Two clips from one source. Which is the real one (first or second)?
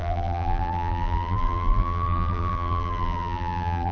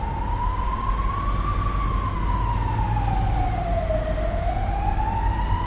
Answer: second